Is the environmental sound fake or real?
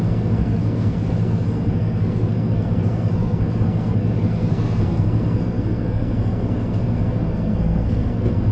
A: fake